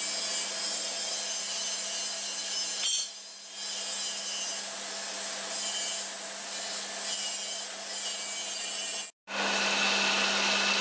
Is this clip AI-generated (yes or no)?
no